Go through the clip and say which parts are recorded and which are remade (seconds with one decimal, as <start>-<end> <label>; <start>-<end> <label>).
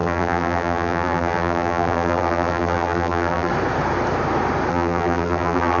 0.0-3.5 remade; 3.5-4.7 recorded; 4.7-5.8 remade